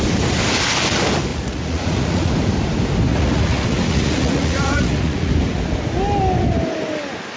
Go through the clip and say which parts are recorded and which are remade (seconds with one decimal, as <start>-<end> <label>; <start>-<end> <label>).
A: 0.0-1.3 recorded; 1.3-2.3 remade; 2.3-3.1 recorded; 3.1-5.3 remade; 5.3-7.4 recorded